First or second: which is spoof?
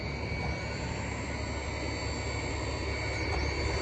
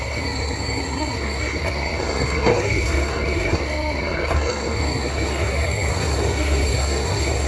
second